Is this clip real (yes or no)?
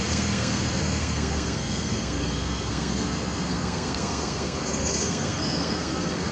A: no